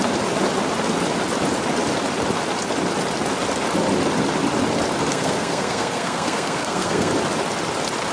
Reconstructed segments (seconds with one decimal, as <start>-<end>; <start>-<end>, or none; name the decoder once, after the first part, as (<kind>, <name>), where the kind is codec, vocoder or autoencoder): 5.1-7.1 (codec, SNAC)